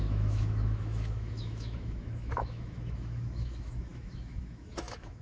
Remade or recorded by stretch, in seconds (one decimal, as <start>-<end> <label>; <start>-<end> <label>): 0.0-5.2 remade